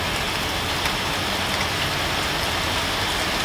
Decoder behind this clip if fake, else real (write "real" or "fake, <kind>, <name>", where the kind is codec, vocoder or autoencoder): real